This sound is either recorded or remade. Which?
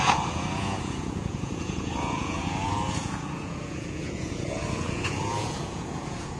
remade